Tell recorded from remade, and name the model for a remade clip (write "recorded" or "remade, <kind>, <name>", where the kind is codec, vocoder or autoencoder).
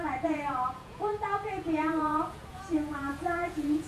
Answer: remade, vocoder, Vocos